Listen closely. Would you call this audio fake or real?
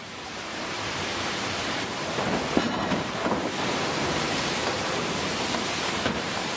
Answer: fake